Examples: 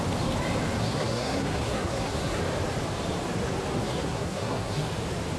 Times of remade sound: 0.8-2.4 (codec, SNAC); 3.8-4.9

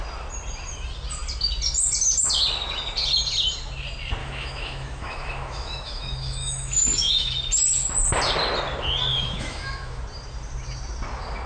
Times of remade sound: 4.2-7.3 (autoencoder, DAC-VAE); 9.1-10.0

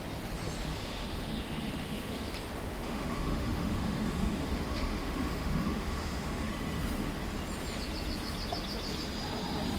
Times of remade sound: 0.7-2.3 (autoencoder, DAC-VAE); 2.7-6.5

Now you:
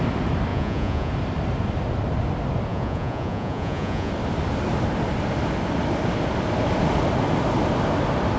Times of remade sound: 0.5-1.1 (vocoder, Vocos); 2.7-4.1